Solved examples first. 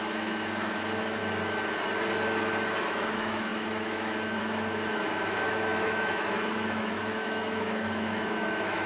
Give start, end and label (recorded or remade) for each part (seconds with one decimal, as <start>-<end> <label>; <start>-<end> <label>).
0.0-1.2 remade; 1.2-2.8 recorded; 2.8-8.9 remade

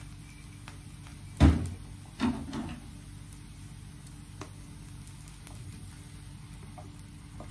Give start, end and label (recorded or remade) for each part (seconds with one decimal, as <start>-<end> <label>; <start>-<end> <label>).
0.0-7.5 recorded

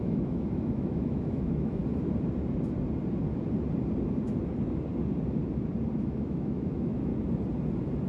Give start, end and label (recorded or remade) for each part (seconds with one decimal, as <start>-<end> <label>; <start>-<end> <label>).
0.0-1.8 remade; 1.8-5.9 recorded; 5.9-7.1 remade; 7.1-8.1 recorded